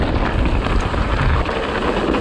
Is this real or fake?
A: real